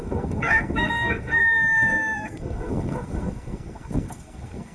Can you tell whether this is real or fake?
fake